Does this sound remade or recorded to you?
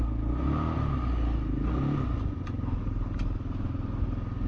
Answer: recorded